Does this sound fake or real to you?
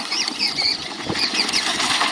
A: fake